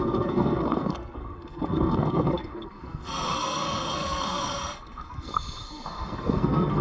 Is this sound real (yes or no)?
no